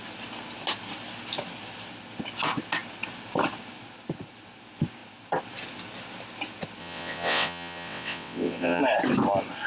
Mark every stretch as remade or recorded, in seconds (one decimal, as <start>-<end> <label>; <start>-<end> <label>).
0.0-6.8 recorded; 6.8-8.8 remade; 8.8-9.7 recorded